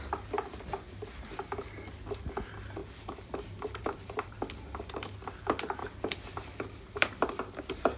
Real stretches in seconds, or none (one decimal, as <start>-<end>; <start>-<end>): 0.0-2.8; 3.4-3.8; 4.4-5.8; 7.4-8.0